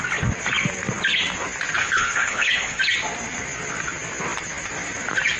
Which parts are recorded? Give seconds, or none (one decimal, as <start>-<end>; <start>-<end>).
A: 0.0-1.8; 2.8-5.4